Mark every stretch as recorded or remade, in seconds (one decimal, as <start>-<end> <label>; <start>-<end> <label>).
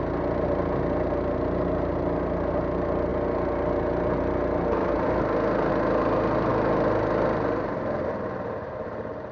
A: 0.0-9.3 recorded